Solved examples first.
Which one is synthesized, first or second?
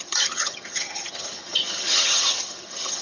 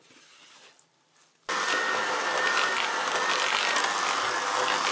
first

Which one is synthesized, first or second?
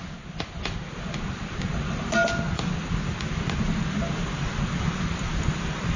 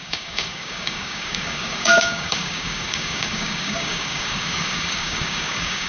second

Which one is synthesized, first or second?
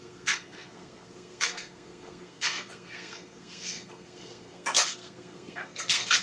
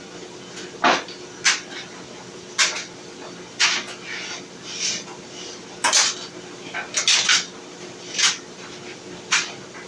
first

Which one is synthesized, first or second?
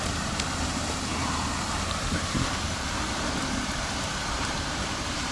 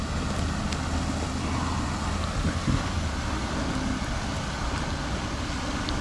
first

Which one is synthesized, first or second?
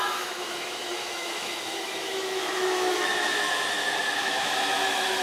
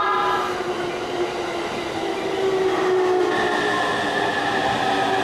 first